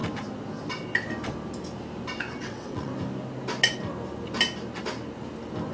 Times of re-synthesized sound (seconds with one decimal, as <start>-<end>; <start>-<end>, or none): 2.4-2.9